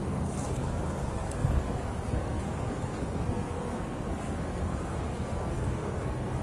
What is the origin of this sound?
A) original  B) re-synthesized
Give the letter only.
B